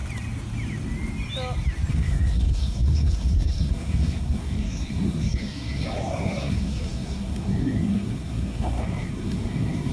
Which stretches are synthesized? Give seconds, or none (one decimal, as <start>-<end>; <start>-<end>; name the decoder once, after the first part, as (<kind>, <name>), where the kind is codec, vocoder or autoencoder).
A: 1.9-9.9 (codec, SNAC)